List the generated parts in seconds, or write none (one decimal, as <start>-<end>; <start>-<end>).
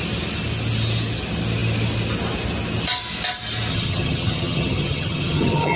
3.7-5.8